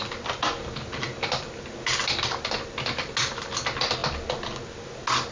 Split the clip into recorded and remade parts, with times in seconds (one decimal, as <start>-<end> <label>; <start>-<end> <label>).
0.0-5.3 recorded